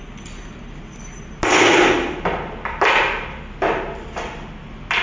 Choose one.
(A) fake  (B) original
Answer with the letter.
B